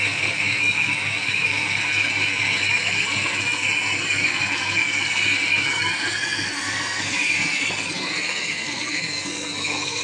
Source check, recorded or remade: remade